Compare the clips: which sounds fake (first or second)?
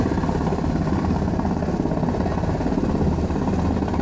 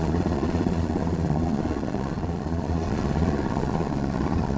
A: second